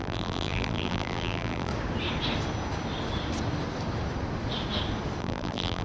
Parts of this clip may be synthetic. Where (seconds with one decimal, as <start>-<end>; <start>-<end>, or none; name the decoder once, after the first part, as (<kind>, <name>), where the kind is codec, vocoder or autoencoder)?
0.0-1.7 (vocoder, BigVGAN v2); 5.2-5.8